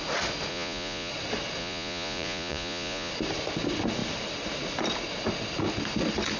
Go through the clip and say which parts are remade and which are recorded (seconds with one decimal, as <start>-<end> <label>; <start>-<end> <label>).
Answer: 0.0-0.5 recorded; 0.5-1.1 remade; 1.1-1.6 recorded; 1.6-3.1 remade; 3.1-6.4 recorded